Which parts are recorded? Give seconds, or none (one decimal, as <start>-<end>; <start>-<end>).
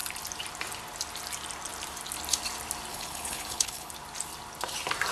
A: 0.0-2.9; 3.9-5.1